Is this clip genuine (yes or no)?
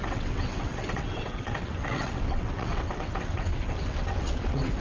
no